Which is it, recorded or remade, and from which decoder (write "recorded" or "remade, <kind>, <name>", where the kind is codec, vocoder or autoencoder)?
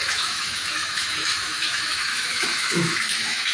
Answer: remade, autoencoder, DAC-VAE